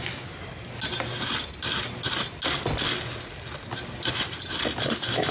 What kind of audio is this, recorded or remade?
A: recorded